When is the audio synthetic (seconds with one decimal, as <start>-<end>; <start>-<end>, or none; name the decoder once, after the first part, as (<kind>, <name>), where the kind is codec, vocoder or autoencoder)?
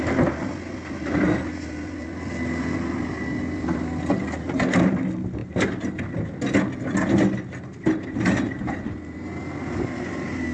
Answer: none